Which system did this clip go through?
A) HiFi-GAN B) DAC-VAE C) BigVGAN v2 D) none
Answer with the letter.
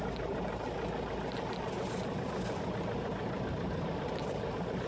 D